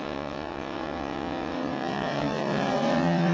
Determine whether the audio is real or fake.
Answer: fake